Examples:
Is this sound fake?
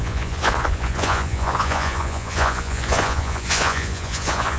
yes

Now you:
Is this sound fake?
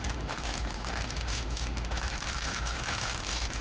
yes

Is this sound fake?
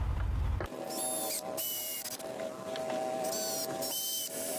no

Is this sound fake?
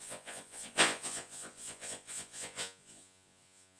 yes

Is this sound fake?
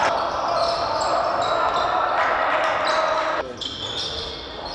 no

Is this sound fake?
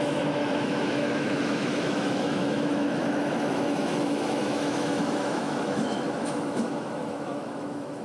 yes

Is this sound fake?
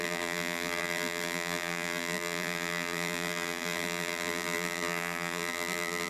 yes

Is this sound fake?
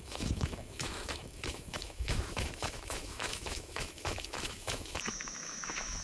yes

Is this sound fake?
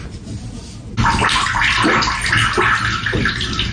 no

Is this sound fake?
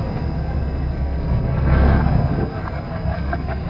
yes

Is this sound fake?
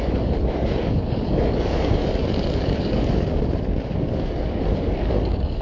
yes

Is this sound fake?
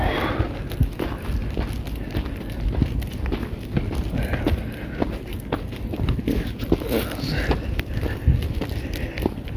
no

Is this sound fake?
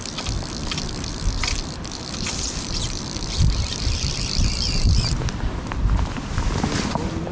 no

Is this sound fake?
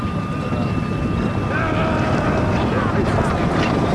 no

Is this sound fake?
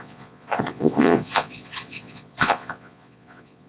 yes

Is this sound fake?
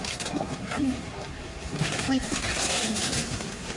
yes